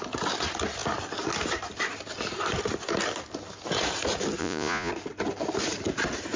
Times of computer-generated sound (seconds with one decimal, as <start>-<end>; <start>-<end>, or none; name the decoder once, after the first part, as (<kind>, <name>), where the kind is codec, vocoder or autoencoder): 4.4-4.9 (vocoder, Vocos)